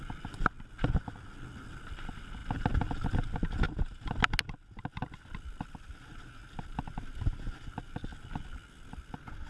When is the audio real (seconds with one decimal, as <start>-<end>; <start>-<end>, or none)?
0.0-9.5